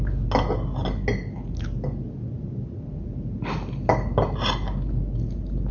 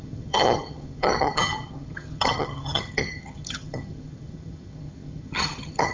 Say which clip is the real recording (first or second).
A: first